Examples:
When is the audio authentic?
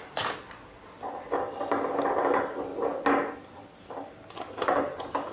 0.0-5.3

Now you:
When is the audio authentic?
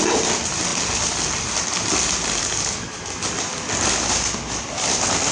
0.0-5.3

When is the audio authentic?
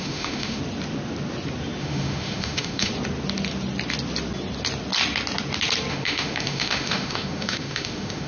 0.6-1.8; 2.9-5.9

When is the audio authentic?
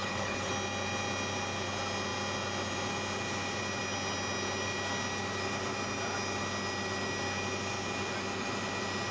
0.5-9.1